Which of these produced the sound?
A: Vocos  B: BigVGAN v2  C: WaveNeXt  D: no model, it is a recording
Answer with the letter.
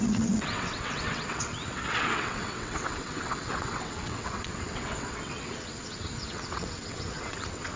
C